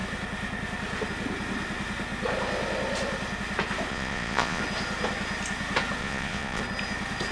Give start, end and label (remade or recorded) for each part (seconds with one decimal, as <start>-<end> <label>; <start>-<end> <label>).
0.0-3.9 recorded; 3.9-4.6 remade; 4.6-6.0 recorded; 6.0-6.6 remade; 6.6-7.3 recorded